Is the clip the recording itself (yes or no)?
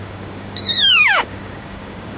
no